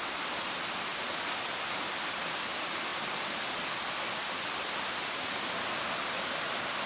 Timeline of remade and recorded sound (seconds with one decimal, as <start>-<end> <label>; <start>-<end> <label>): 0.0-6.9 recorded